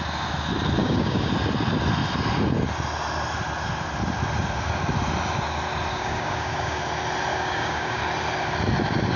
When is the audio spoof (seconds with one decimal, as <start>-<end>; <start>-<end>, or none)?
0.8-1.3; 5.9-6.8; 7.3-8.0